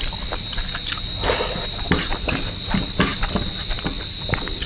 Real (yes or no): yes